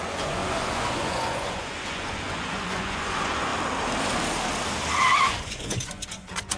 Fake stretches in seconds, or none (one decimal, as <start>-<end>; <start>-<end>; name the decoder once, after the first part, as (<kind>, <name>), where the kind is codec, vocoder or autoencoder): 0.0-3.5 (vocoder, Vocos); 5.1-6.6